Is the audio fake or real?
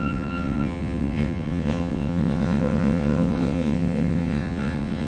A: fake